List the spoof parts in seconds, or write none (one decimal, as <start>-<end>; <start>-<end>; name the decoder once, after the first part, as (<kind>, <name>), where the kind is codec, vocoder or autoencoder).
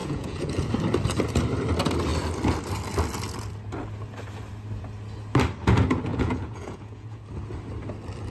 0.0-0.7 (vocoder, Vocos); 6.1-7.2